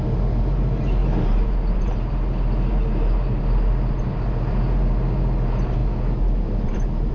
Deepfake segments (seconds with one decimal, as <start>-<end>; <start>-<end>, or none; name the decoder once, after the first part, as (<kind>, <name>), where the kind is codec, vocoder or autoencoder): none

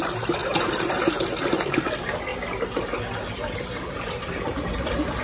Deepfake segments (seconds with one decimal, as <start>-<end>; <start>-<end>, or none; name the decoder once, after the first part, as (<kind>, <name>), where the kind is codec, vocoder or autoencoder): 0.0-2.3 (vocoder, BigVGAN v2); 3.3-5.2

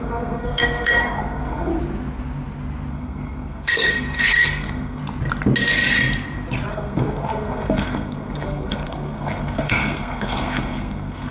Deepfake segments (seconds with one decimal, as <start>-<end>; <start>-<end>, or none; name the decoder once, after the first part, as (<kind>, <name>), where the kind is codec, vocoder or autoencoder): 0.0-1.7 (codec, SNAC); 2.9-5.0; 6.7-11.3

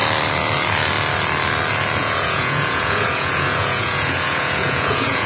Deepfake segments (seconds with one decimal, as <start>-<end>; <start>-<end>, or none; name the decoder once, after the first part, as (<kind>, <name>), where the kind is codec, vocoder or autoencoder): 2.0-5.3 (vocoder, Vocos)